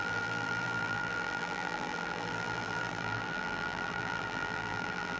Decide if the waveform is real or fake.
fake